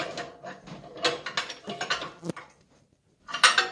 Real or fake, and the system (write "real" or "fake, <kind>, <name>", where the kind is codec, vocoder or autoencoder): real